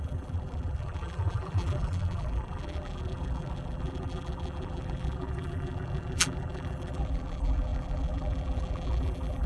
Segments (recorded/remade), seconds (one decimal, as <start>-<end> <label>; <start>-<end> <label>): 0.0-9.5 remade